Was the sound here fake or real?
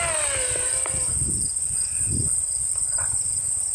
real